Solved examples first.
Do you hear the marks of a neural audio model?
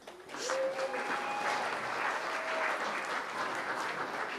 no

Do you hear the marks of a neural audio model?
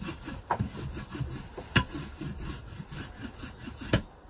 no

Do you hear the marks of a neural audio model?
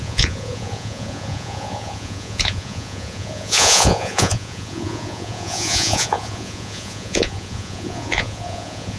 yes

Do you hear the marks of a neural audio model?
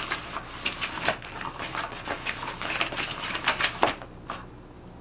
no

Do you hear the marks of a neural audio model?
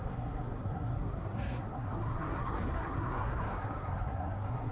yes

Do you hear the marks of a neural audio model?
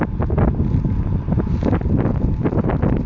no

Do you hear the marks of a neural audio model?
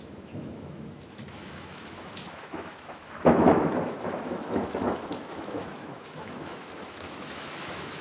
yes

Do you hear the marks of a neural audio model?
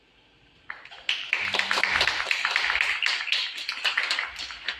no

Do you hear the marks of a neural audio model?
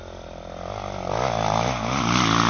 no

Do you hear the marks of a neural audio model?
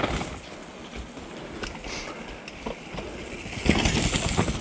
no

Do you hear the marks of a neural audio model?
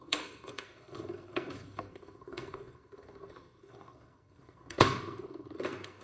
yes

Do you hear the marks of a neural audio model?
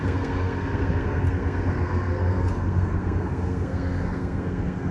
yes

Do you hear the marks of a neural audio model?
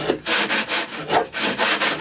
no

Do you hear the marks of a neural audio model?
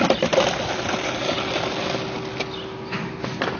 no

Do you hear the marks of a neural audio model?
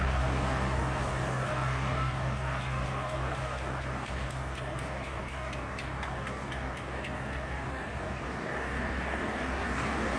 yes